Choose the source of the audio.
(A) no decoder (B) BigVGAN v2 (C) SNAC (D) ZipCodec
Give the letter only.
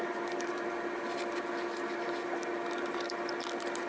A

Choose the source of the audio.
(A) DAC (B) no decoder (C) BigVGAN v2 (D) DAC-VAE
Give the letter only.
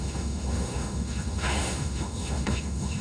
D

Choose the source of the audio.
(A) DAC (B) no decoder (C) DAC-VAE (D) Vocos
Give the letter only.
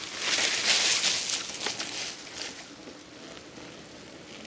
B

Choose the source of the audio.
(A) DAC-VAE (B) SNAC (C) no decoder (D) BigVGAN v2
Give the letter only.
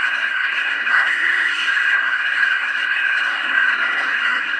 B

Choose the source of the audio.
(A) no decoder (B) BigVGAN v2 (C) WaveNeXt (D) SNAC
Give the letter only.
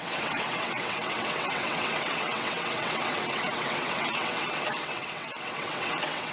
C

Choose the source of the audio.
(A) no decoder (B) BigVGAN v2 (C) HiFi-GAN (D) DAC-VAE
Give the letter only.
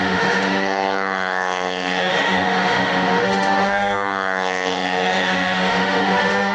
D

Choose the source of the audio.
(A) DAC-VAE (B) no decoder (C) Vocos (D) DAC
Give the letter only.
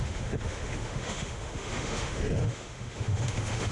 A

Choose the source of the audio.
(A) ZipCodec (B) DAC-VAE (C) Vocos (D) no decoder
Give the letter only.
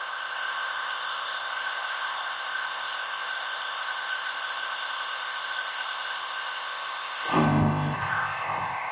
A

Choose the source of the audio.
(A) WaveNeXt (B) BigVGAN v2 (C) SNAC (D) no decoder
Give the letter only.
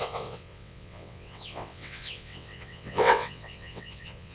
A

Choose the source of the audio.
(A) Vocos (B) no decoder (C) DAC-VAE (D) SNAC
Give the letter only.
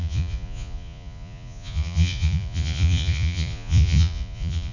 A